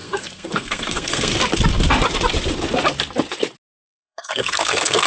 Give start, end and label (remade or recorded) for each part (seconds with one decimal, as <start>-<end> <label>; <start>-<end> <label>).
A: 0.0-1.3 remade; 1.3-3.8 recorded; 3.8-5.1 remade